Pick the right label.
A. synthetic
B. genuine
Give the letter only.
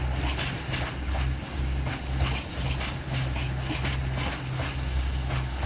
B